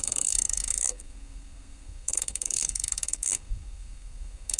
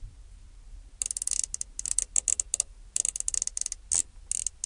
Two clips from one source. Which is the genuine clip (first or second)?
second